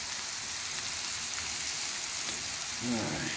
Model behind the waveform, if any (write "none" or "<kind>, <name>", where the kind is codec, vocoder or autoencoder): none